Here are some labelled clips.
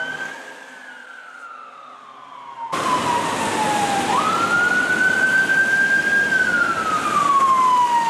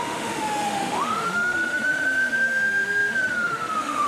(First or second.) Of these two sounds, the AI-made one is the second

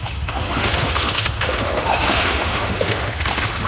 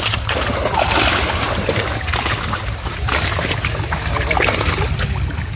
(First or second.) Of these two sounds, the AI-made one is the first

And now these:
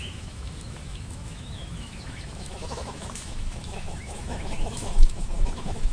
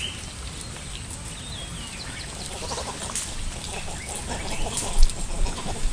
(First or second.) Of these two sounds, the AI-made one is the first